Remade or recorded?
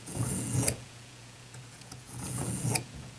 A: remade